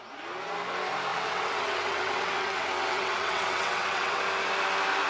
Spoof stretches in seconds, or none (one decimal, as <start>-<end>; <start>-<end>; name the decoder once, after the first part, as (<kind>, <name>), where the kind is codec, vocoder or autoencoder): 1.1-4.2 (vocoder, WaveNeXt)